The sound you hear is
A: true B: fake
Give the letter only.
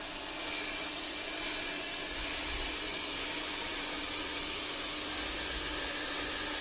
B